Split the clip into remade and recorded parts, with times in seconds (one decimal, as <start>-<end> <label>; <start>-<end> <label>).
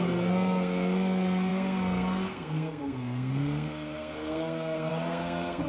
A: 0.0-5.7 remade